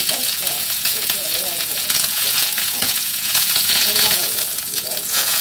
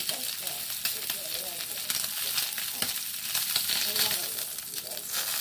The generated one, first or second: first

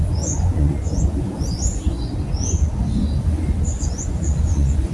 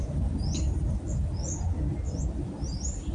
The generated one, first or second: first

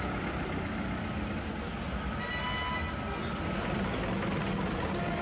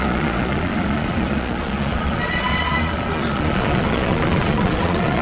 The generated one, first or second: second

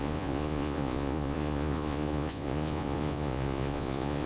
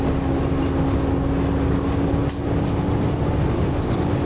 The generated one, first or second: first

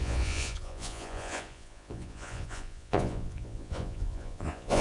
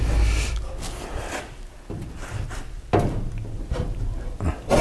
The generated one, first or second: first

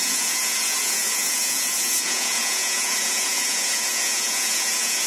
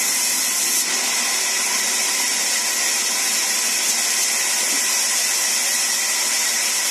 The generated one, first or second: first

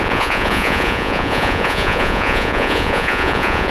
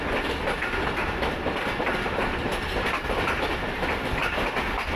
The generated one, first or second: first